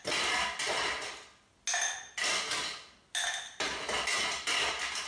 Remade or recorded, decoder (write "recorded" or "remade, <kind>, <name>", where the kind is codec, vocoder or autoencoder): recorded